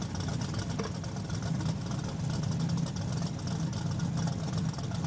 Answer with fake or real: real